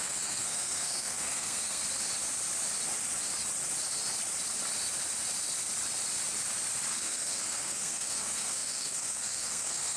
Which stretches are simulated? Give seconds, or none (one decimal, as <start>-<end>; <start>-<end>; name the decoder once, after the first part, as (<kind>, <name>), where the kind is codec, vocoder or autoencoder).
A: 0.0-1.8 (codec, SNAC); 6.9-10.0